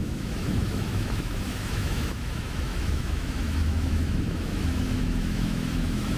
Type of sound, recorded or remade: remade